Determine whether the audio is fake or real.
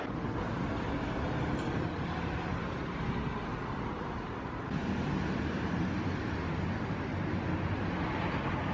real